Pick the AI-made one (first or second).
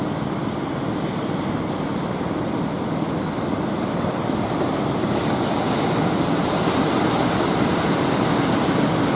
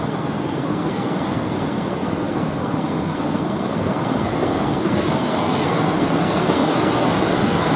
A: second